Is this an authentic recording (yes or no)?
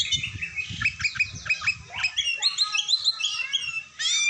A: yes